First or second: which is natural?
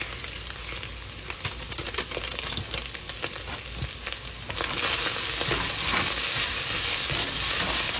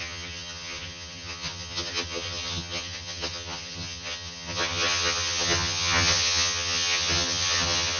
first